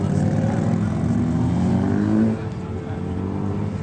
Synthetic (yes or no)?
no